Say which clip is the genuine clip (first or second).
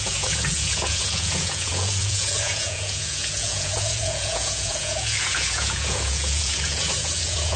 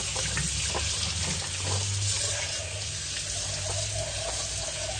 second